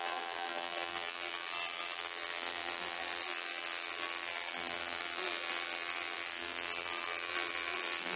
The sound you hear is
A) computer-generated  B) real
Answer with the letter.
A